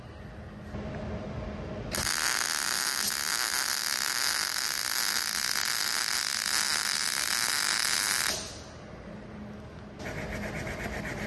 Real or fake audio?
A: real